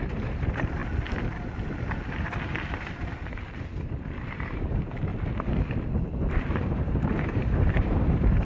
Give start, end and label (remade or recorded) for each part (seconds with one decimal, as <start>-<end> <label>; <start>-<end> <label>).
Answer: 0.0-0.8 remade; 0.8-4.3 recorded; 4.3-5.1 remade; 5.1-6.5 recorded; 6.5-8.4 remade